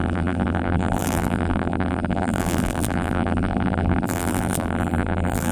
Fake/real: fake